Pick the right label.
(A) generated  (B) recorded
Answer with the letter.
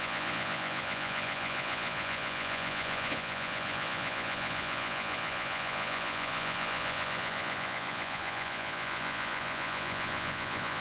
A